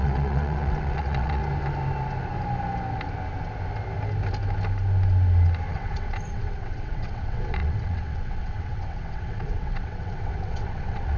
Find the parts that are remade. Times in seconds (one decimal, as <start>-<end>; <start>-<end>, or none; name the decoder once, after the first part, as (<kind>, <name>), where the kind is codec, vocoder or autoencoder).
0.0-1.4 (vocoder, WaveNeXt); 5.7-11.2